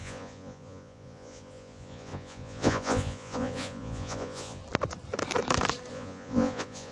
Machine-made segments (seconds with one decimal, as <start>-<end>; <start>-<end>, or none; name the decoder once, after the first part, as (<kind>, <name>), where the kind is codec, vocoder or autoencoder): 0.0-4.6 (vocoder, Vocos); 5.9-6.9